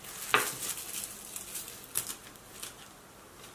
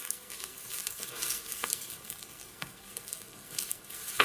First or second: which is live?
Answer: first